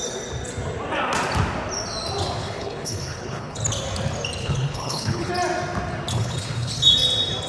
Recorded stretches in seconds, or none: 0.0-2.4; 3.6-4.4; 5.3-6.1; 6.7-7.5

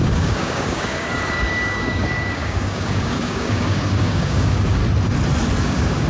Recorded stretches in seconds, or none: 4.8-5.6

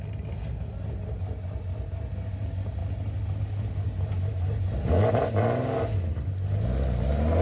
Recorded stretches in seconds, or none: 0.0-7.4

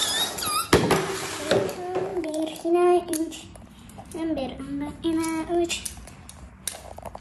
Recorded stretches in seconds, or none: 0.0-2.1; 4.6-7.2